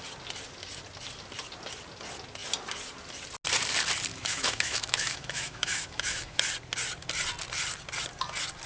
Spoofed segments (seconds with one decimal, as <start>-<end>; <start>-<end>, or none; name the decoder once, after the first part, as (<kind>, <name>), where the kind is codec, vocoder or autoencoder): 4.1-6.4 (autoencoder, DAC-VAE)